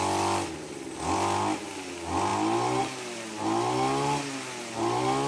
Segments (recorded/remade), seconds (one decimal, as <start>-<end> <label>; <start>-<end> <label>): 0.0-5.3 recorded